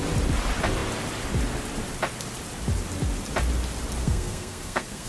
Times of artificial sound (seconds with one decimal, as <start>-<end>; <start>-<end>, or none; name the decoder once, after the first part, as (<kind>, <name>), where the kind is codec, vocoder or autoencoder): 4.0-5.1 (codec, SNAC)